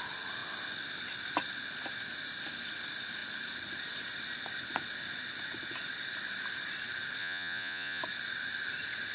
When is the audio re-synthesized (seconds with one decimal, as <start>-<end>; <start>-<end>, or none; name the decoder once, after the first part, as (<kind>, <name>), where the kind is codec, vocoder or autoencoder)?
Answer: 7.2-8.0 (vocoder, Vocos)